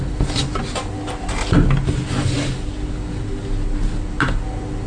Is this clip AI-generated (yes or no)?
no